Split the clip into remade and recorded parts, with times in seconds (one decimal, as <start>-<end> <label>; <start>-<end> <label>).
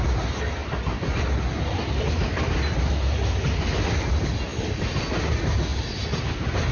0.0-6.7 recorded